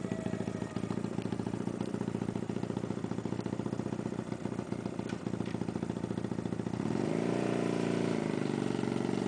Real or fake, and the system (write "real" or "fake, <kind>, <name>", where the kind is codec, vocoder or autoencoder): real